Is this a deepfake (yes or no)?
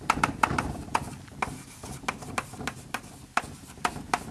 no